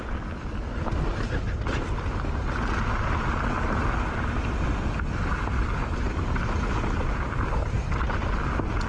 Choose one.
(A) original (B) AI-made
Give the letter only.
A